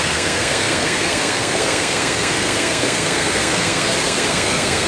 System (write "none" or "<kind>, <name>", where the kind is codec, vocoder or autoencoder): codec, SNAC